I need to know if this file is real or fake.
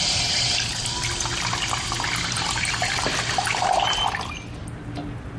real